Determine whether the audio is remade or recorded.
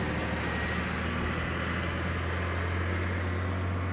recorded